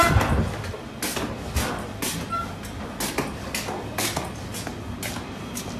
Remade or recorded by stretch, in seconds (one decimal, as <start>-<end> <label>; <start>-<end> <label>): 0.0-5.8 recorded